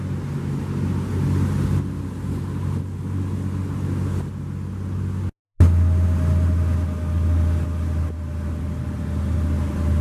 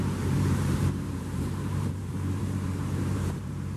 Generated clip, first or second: second